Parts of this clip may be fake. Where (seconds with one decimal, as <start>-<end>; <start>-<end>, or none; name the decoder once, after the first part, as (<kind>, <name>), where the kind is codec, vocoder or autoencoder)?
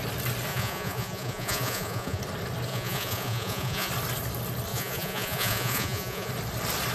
0.5-2.2 (vocoder, Vocos); 2.7-3.9; 4.7-6.3